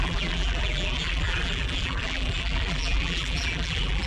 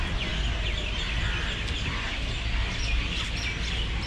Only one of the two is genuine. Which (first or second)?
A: second